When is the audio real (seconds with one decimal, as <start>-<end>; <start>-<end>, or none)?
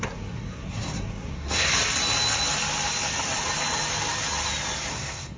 1.7-4.9